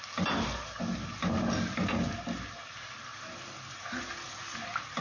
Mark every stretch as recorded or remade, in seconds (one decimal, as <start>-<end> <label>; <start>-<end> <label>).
0.0-5.0 recorded